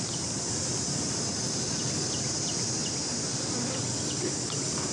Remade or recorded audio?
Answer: recorded